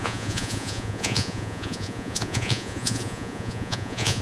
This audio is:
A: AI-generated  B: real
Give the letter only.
A